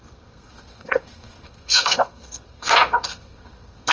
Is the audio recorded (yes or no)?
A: no